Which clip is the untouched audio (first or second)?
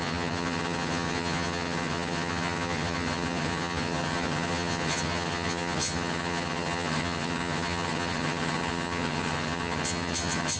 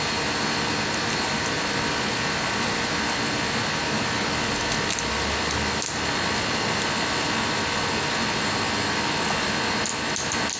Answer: second